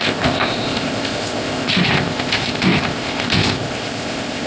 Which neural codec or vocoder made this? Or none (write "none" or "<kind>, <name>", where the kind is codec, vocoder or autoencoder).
codec, ZipCodec